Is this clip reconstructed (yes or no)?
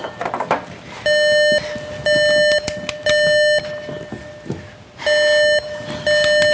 no